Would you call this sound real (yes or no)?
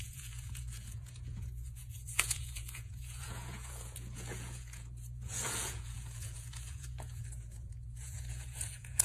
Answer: no